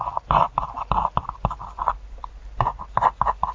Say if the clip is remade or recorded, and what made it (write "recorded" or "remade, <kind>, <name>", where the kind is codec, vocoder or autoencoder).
recorded